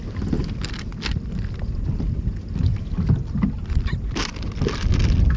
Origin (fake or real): real